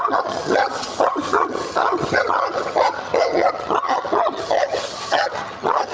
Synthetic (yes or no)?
yes